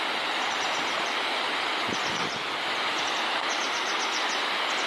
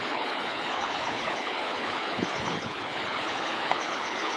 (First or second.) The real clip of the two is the first